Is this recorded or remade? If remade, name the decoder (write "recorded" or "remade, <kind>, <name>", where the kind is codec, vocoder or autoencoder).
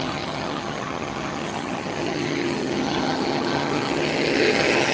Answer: remade, vocoder, HiFi-GAN